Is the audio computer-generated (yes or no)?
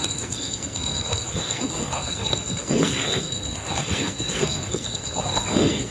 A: yes